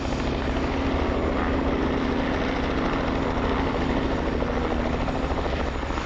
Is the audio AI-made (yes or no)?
no